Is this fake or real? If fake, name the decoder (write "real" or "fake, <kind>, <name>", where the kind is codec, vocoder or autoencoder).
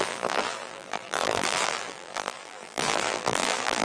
fake, vocoder, BigVGAN v2